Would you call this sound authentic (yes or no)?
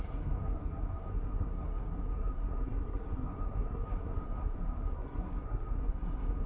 no